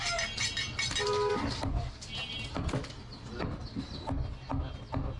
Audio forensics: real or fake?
real